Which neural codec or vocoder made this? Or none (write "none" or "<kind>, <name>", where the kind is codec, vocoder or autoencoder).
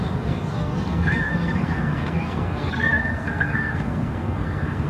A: codec, SNAC